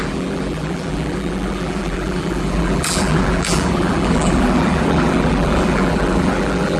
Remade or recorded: remade